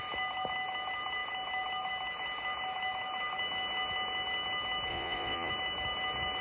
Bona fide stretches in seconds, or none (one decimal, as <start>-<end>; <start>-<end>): 0.0-4.9; 5.5-6.4